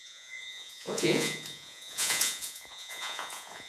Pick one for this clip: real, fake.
fake